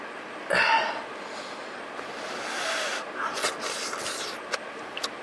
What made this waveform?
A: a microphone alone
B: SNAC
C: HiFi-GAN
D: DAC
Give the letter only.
A